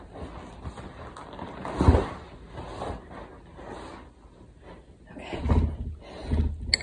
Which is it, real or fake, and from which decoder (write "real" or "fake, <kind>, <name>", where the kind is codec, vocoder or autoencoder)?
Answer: real